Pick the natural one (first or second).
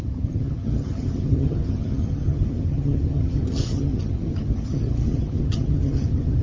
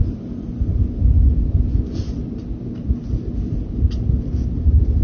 second